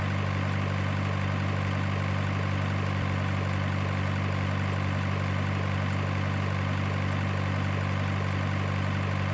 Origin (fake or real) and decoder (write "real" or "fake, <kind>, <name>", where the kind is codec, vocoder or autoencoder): real